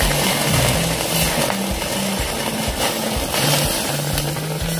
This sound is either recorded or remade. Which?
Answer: recorded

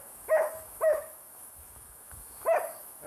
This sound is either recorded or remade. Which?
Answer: remade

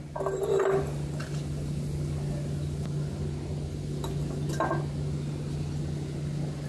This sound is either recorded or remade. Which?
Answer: recorded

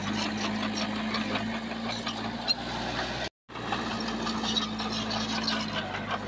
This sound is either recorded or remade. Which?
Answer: recorded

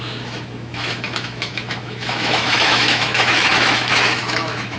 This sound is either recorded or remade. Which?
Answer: remade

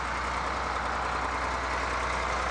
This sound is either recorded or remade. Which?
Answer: recorded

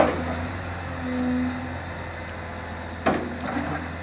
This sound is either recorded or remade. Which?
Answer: recorded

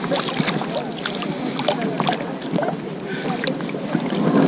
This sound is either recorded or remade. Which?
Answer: recorded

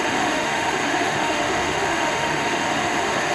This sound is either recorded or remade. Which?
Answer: remade